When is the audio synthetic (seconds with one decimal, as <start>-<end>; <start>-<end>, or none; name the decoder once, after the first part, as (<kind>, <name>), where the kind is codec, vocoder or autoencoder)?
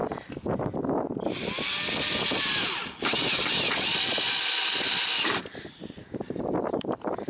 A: 0.0-0.5 (vocoder, BigVGAN v2); 3.9-7.3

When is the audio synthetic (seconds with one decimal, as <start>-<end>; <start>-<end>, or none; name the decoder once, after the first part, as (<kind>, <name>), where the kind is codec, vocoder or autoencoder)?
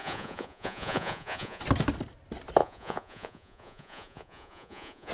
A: 0.0-1.6 (vocoder, Vocos); 2.6-5.1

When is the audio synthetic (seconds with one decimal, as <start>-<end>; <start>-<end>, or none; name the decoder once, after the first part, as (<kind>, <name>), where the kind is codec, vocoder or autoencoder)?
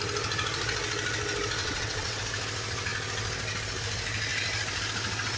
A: 1.6-2.2 (vocoder, WaveNeXt)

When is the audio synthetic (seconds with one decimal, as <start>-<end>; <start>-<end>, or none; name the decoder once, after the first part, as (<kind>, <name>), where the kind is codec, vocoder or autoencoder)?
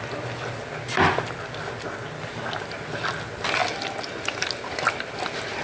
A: none